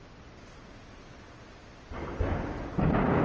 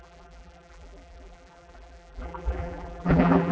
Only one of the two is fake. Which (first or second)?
second